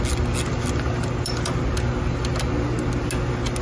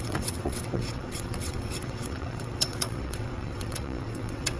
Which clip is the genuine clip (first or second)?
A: first